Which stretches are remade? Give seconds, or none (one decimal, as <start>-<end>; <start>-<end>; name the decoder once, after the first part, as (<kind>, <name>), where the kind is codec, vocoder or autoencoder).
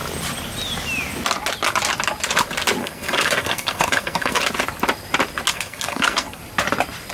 2.8-4.4 (codec, SNAC); 5.5-6.4